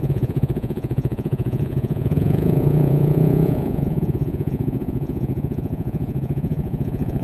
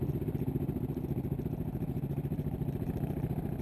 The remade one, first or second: first